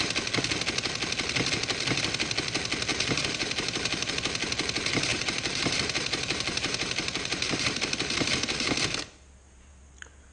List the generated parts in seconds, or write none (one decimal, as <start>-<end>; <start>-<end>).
2.9-4.1; 5.1-8.3